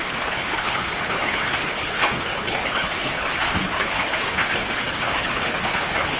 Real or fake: fake